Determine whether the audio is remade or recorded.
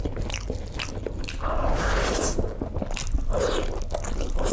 recorded